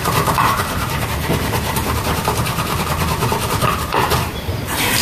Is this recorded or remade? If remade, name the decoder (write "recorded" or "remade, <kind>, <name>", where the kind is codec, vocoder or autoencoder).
remade, vocoder, BigVGAN v2